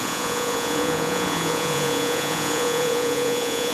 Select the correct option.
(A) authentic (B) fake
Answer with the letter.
B